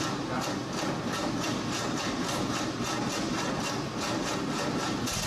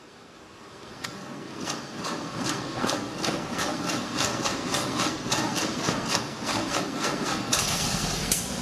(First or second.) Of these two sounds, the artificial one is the second